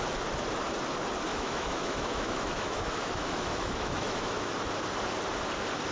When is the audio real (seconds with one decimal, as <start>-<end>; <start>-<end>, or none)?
0.0-1.3; 4.5-5.9